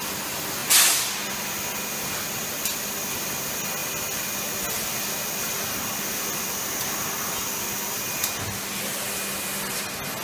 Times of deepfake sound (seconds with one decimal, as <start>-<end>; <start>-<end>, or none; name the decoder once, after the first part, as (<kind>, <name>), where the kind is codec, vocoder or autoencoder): none